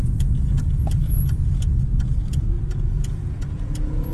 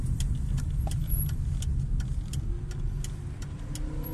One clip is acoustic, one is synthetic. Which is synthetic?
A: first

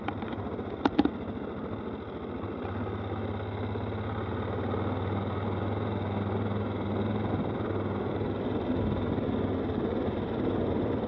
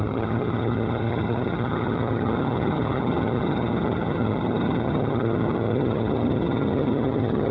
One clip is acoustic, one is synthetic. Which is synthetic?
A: second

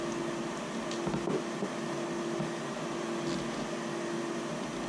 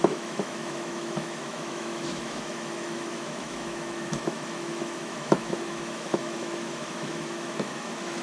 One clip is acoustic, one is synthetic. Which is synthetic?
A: second